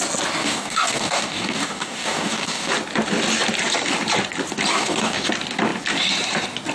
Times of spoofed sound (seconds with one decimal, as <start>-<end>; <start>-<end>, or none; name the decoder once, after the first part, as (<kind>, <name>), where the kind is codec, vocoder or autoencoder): 0.4-2.7 (codec, DAC); 4.7-5.3